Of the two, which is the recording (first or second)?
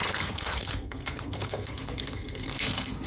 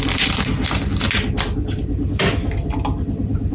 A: second